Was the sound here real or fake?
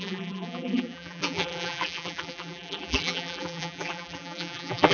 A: fake